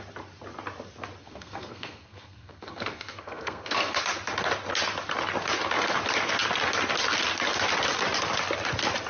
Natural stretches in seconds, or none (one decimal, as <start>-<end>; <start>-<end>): 0.0-1.2; 4.0-9.1

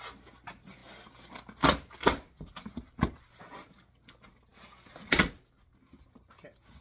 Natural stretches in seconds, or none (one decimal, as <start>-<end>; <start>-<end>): 0.0-6.8